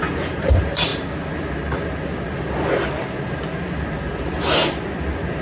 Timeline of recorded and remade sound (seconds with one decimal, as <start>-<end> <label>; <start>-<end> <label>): 0.0-5.4 recorded